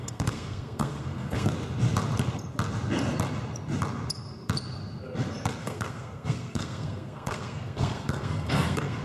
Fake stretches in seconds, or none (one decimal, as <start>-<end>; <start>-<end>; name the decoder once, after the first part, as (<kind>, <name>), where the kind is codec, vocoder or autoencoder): 0.0-1.5 (codec, SNAC); 5.6-9.0